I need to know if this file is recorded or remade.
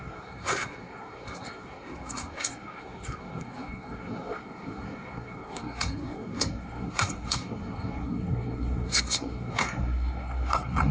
remade